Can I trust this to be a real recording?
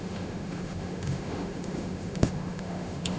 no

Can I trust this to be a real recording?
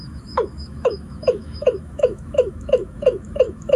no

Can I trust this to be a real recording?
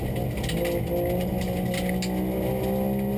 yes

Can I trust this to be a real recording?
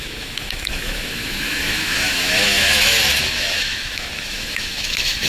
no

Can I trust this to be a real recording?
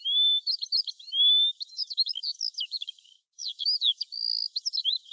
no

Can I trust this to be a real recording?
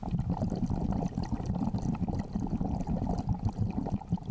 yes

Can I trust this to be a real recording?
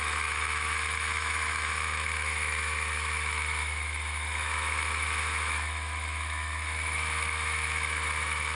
no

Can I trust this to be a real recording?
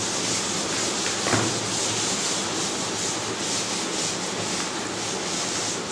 yes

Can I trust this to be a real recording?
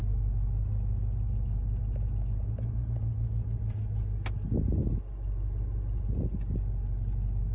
yes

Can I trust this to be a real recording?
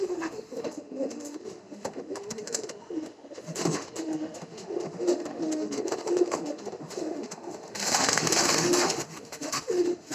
no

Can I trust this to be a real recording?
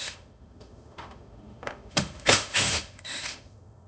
no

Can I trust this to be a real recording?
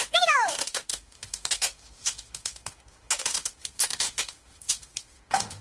no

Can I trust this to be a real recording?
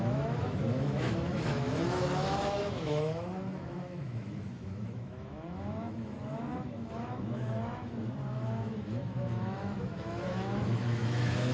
no